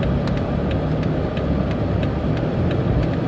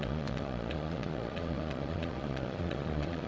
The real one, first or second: first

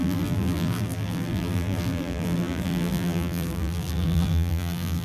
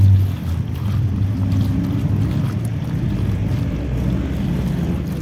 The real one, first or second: second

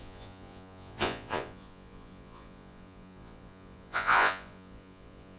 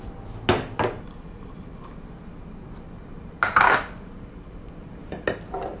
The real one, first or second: second